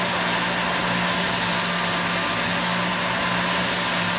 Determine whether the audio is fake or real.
real